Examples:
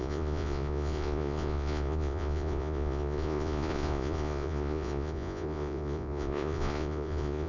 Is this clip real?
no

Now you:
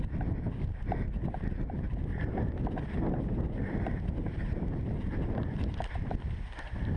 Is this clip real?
yes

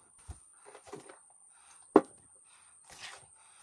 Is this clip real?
yes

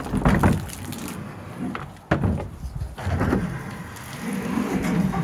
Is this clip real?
yes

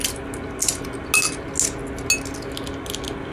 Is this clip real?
yes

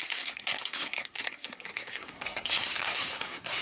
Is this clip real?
no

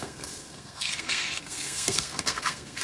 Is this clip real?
no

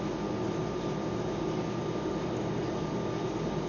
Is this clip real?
yes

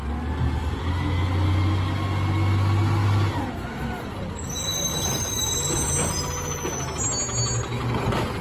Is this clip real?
yes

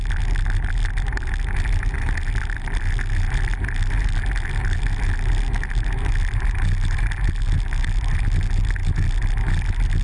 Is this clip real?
yes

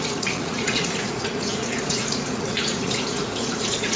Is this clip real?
no